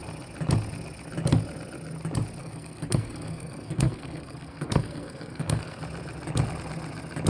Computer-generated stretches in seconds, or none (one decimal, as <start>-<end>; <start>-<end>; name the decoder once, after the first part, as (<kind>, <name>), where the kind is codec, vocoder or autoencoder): 2.4-5.8 (codec, SNAC)